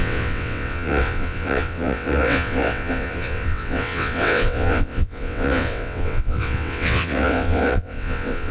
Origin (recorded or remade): remade